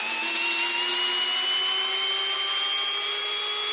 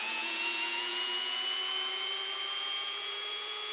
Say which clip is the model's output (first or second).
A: second